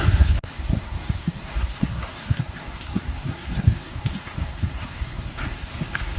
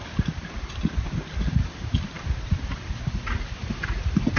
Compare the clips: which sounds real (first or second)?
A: second